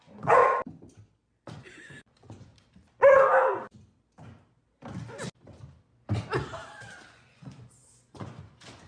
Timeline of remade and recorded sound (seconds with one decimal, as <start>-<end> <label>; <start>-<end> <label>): 0.0-0.4 remade; 0.4-1.5 recorded; 1.5-2.5 remade; 2.5-7.1 recorded; 7.1-8.9 remade